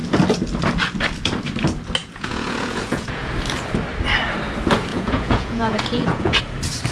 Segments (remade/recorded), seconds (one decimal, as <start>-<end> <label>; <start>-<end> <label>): 0.0-2.0 recorded; 2.0-3.3 remade; 3.3-4.9 recorded; 4.9-6.4 remade; 6.4-6.9 recorded